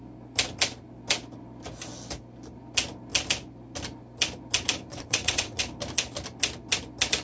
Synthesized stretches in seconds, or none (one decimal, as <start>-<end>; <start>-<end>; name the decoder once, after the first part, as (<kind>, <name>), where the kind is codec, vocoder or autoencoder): 4.9-5.6 (vocoder, WaveNeXt)